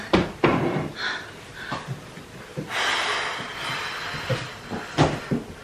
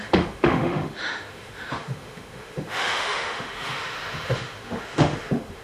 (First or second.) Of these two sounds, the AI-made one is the second